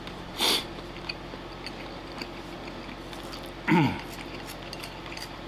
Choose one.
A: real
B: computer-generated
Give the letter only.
A